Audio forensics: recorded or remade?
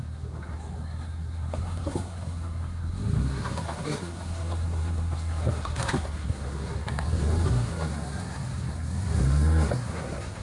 remade